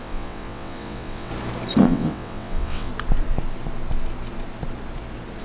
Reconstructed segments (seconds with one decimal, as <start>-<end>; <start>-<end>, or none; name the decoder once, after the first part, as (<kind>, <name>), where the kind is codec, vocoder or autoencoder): 0.0-1.3 (vocoder, WaveNeXt); 1.8-2.9